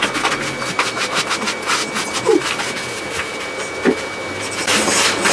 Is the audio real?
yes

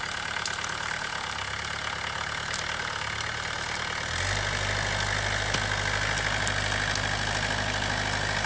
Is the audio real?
yes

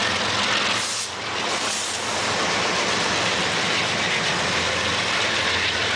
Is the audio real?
yes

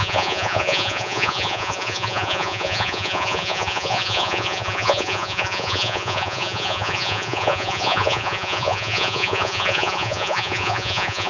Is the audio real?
no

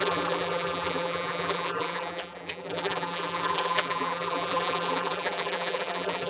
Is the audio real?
no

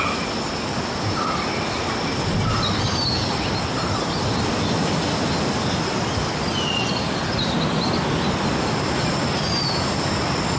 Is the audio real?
yes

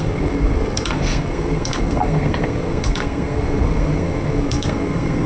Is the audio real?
no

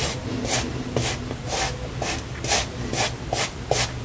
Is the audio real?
yes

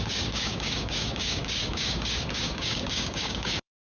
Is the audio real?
no